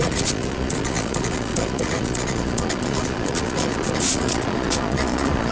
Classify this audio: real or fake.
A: fake